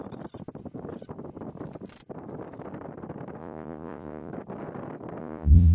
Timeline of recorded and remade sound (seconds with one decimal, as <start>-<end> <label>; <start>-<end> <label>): 0.0-3.4 recorded; 3.4-4.3 remade; 4.3-5.2 recorded; 5.2-5.7 remade